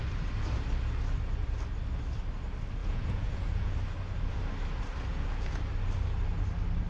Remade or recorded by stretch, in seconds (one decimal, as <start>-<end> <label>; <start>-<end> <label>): 0.0-2.8 recorded; 2.8-3.7 remade; 3.7-5.1 recorded; 5.1-5.6 remade; 5.6-6.9 recorded